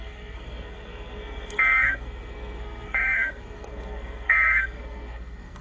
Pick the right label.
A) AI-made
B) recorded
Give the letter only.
A